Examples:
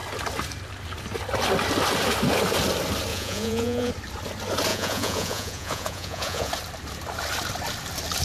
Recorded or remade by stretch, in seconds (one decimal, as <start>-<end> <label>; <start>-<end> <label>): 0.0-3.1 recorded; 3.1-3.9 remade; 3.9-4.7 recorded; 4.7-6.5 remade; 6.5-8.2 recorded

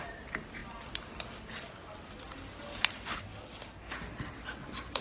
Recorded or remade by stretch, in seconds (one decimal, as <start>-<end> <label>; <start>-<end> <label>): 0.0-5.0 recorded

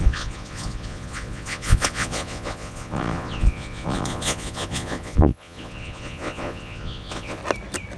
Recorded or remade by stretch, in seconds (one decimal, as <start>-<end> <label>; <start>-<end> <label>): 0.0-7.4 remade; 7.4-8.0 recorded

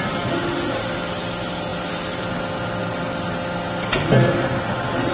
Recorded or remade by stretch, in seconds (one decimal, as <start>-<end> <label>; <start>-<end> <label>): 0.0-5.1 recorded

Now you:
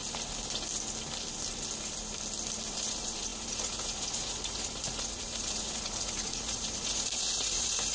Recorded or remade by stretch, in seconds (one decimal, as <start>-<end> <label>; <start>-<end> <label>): 0.0-2.7 recorded; 2.7-7.9 remade